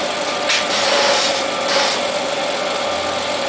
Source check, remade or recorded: recorded